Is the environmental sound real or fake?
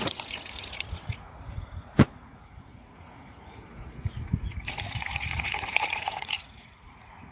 fake